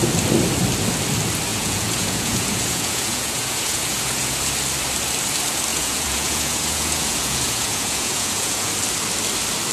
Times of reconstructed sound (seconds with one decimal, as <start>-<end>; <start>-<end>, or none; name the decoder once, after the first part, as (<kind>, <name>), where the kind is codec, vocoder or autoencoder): 1.5-4.4 (vocoder, Vocos); 5.7-8.7

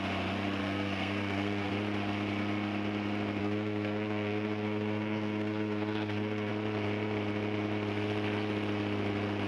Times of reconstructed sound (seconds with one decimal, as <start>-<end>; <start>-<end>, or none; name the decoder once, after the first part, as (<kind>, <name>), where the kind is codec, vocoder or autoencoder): 0.6-1.7 (codec, SNAC); 3.4-6.5

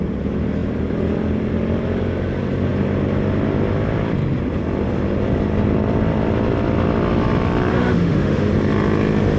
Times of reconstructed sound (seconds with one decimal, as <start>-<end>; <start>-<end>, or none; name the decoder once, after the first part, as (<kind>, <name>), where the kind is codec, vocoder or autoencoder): 7.7-8.5 (autoencoder, DAC-VAE)

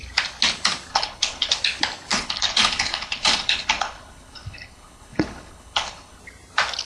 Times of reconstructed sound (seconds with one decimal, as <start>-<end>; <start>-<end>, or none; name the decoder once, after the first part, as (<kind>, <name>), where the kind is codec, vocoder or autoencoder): 0.9-1.5 (codec, HILCodec); 2.1-6.2

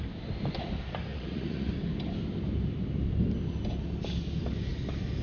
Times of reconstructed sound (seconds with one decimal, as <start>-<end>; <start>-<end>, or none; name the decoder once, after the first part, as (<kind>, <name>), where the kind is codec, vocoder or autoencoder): 1.1-1.7 (vocoder, Vocos)

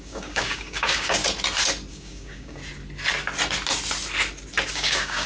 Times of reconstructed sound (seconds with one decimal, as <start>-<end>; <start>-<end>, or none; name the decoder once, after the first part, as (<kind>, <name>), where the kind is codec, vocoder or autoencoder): 0.0-1.2 (codec, DAC); 1.9-2.6; 4.7-5.3